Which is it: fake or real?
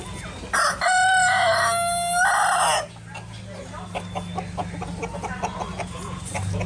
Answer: real